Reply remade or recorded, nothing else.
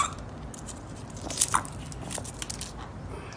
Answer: recorded